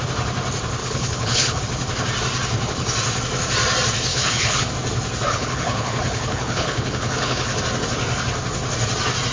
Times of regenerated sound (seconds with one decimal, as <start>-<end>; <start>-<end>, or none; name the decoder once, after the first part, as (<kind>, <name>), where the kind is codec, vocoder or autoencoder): 0.8-1.6 (codec, HILCodec); 4.1-4.7; 5.3-7.6